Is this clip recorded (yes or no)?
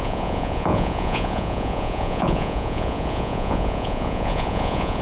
no